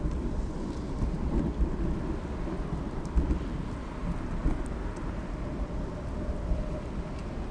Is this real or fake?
real